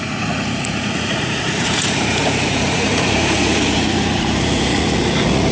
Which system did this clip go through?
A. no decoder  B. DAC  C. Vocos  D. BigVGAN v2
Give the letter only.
C